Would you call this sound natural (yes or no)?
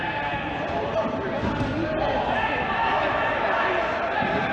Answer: yes